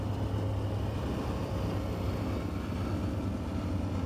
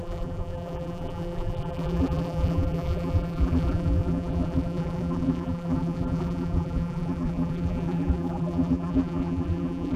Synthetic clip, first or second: second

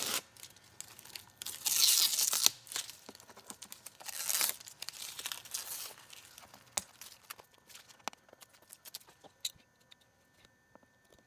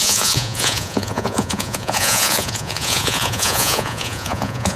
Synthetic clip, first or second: second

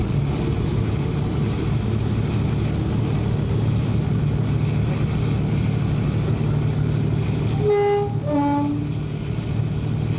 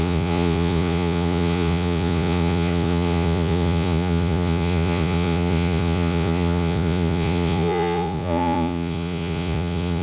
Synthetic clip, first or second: second